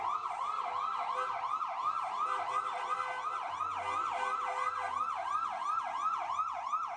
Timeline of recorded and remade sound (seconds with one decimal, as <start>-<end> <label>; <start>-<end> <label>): 0.0-7.0 recorded